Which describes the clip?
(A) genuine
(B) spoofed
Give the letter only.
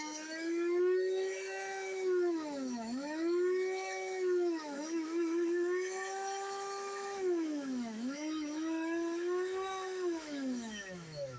B